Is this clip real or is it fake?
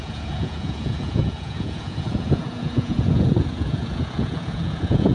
fake